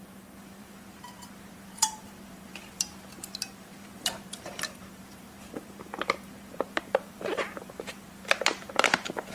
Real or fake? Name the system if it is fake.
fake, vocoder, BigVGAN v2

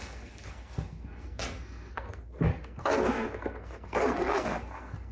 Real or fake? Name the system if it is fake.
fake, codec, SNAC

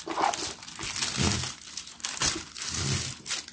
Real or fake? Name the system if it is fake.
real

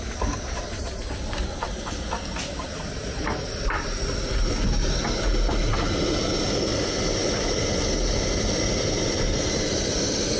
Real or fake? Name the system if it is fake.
real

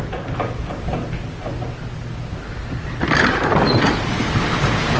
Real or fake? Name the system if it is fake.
real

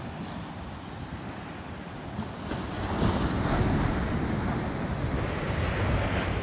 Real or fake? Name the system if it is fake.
real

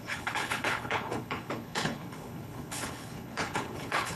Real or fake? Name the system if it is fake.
fake, codec, HILCodec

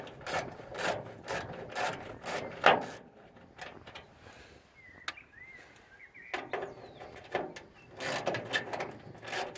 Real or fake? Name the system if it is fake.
real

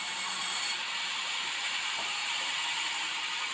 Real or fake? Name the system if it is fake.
fake, vocoder, BigVGAN v2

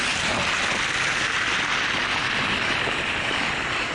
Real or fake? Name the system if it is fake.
fake, vocoder, BigVGAN v2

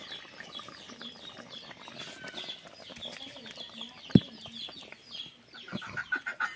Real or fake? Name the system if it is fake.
fake, vocoder, BigVGAN v2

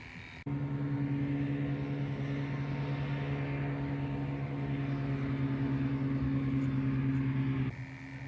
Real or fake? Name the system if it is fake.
real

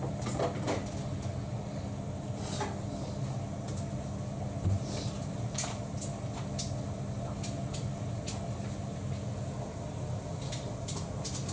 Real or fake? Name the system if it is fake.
real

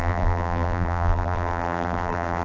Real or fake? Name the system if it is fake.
fake, vocoder, BigVGAN v2